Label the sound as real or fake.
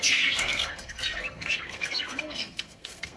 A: fake